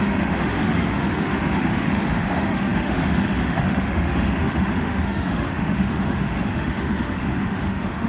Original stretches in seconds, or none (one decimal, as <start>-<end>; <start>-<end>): none